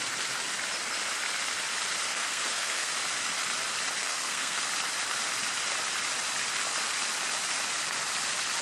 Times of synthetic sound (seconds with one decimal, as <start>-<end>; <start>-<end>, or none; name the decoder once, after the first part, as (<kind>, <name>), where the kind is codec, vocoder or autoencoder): 2.1-2.9 (codec, SNAC); 4.0-4.6